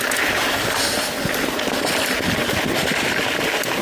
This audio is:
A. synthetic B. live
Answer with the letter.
B